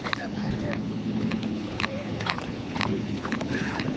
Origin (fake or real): fake